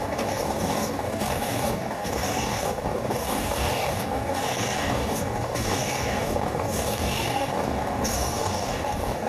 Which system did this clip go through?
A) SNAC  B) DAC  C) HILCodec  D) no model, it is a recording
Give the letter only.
B